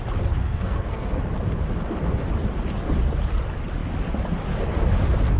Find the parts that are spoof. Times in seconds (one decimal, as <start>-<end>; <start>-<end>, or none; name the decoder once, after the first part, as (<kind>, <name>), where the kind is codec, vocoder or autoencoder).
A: 0.4-1.2 (codec, SNAC)